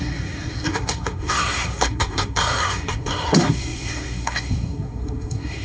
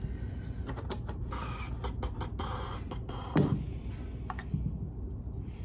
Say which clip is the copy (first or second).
first